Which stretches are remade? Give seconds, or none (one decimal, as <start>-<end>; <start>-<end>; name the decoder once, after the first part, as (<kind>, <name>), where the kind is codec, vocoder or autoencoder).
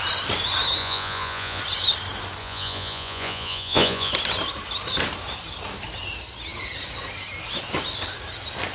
0.8-1.6 (vocoder, Vocos); 2.4-4.1